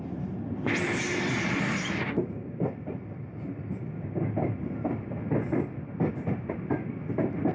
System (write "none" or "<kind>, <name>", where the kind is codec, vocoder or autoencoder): none